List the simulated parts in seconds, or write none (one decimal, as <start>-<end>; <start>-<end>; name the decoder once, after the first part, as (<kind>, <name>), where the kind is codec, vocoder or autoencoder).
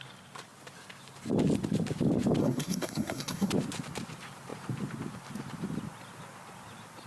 2.4-3.5 (codec, SNAC)